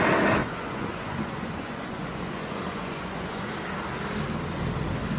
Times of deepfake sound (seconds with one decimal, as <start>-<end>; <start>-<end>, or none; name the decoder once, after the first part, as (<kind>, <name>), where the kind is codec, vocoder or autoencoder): 0.4-3.5 (vocoder, Vocos)